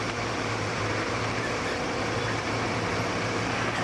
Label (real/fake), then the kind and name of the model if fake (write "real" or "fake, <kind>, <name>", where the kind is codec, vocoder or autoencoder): fake, vocoder, BigVGAN v2